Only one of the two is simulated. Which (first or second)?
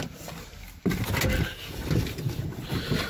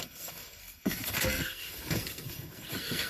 second